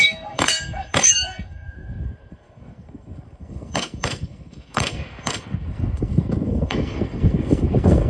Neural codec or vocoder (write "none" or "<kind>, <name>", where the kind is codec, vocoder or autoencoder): codec, SNAC